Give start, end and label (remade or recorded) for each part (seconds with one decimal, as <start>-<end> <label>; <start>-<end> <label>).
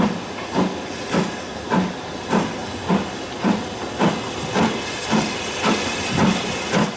0.0-7.0 recorded